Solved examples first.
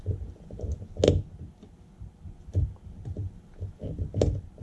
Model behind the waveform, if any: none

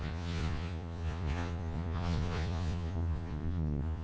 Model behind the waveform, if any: vocoder, Vocos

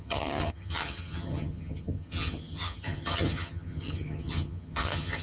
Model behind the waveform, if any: vocoder, HiFi-GAN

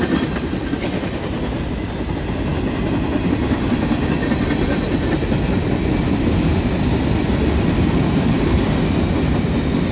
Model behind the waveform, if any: none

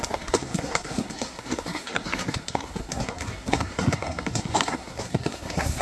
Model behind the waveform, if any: codec, SNAC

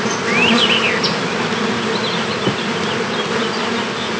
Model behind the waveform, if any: none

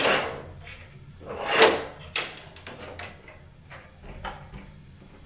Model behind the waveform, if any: none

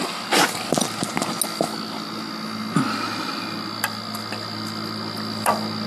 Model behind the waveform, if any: none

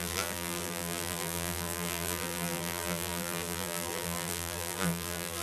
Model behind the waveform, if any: vocoder, BigVGAN v2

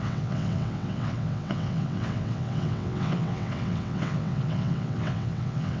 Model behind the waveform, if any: vocoder, WaveNeXt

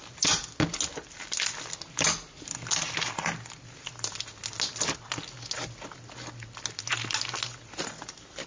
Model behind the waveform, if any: none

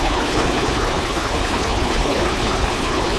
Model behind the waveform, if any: codec, HILCodec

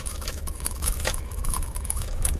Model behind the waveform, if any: autoencoder, DAC-VAE